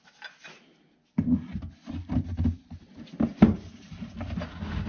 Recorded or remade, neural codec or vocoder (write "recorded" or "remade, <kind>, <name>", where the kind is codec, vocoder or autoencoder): recorded